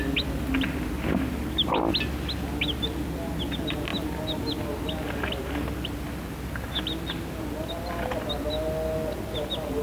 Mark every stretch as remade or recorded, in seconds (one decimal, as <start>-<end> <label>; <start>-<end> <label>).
0.0-9.8 recorded